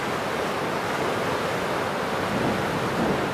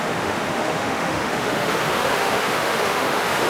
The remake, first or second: second